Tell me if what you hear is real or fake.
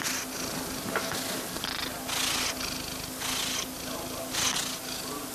real